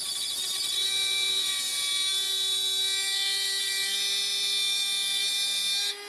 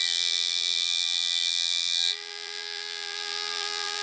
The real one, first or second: first